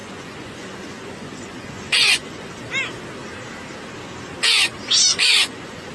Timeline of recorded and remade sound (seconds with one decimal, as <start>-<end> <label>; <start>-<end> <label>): 0.0-2.5 remade; 2.5-5.1 recorded; 5.1-5.9 remade